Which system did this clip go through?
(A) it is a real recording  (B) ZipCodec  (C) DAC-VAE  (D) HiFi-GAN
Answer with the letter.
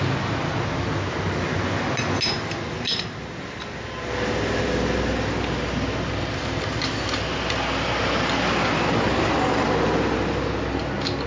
A